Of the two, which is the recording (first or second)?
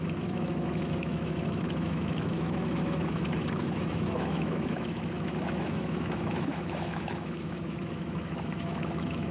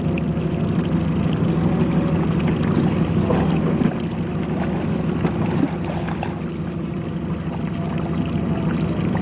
second